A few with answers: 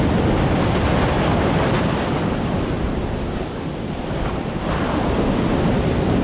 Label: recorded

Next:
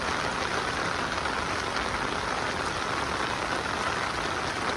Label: recorded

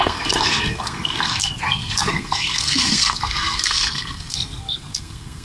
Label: remade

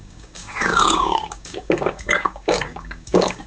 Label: remade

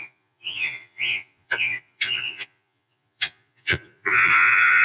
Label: remade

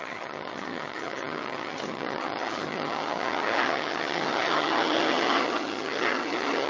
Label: remade